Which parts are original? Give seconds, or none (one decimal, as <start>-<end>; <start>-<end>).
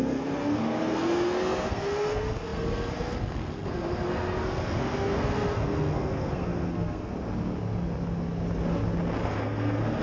7.1-9.2